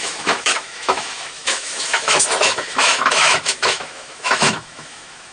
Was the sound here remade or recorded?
remade